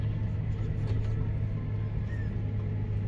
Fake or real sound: real